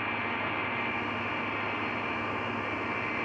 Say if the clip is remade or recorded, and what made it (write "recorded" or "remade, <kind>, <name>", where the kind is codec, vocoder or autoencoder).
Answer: recorded